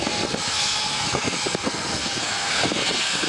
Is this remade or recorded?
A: remade